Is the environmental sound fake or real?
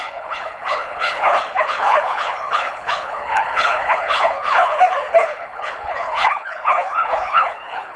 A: fake